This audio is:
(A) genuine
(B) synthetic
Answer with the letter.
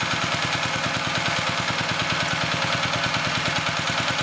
A